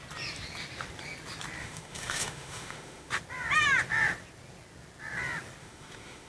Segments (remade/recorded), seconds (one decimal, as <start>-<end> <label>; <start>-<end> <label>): 0.0-1.6 recorded; 1.6-3.1 remade; 3.1-5.6 recorded; 5.6-6.3 remade